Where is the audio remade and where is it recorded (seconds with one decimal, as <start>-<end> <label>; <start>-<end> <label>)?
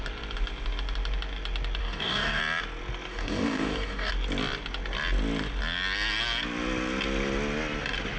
0.0-1.8 recorded; 1.8-2.4 remade; 2.4-3.1 recorded; 3.1-4.1 remade; 4.1-8.2 recorded